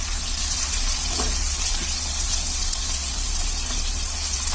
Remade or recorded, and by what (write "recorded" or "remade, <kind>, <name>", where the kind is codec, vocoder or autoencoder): remade, vocoder, Vocos